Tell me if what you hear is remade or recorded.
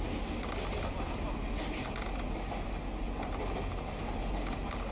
recorded